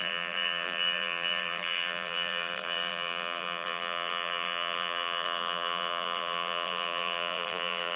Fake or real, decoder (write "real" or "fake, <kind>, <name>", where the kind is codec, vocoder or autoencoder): fake, vocoder, BigVGAN v2